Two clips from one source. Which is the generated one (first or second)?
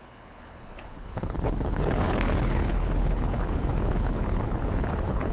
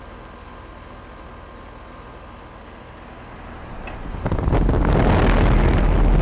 first